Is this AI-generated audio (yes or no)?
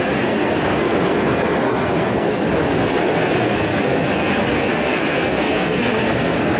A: yes